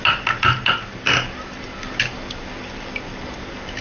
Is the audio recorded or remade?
recorded